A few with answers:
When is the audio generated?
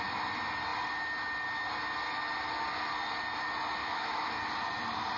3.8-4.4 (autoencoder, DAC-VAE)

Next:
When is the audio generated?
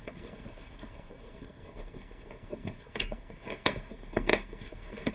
0.0-5.1 (codec, SNAC)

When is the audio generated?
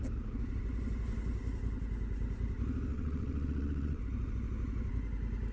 2.9-4.0 (vocoder, WaveNeXt)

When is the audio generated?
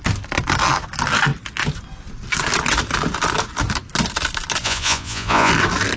4.6-5.5 (vocoder, Vocos)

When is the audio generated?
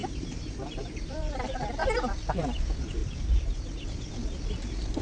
0.0-1.3 (vocoder, BigVGAN v2); 3.0-4.1